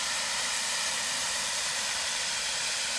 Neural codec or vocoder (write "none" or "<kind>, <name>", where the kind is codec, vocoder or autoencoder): vocoder, BigVGAN v2